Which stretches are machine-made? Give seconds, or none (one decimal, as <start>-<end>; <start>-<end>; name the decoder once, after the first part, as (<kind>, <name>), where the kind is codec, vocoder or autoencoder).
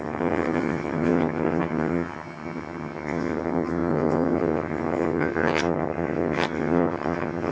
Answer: 0.0-7.5 (vocoder, HiFi-GAN)